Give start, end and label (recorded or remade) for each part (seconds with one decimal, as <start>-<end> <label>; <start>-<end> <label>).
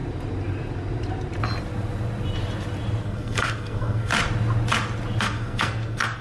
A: 0.0-3.0 recorded; 3.0-4.1 remade; 4.1-5.2 recorded; 5.2-6.2 remade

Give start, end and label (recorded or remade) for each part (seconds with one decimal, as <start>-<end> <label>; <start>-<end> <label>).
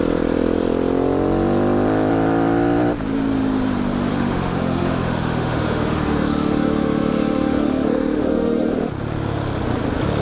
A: 0.0-4.1 recorded; 4.1-8.9 remade; 8.9-10.2 recorded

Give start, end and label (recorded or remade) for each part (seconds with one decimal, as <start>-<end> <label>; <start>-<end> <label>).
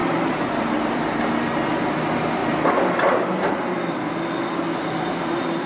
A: 0.0-2.4 remade; 2.4-4.8 recorded; 4.8-5.7 remade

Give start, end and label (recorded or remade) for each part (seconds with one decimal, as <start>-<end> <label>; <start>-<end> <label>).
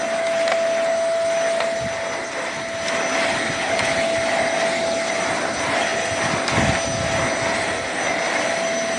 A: 0.0-9.0 recorded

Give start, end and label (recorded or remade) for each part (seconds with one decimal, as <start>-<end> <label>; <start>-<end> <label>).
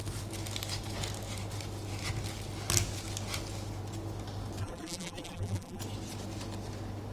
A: 0.0-4.6 recorded; 4.6-5.8 remade; 5.8-7.1 recorded